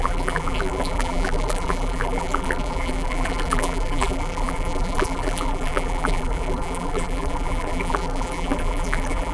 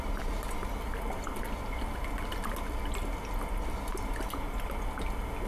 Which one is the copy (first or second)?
first